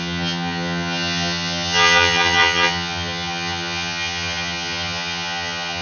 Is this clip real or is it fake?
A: fake